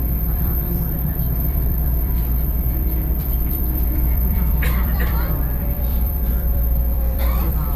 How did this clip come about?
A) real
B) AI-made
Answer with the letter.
B